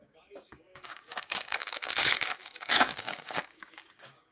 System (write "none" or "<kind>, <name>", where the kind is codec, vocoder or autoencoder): codec, DAC